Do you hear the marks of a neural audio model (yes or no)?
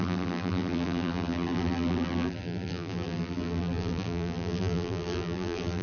yes